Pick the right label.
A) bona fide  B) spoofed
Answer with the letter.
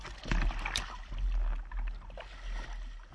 A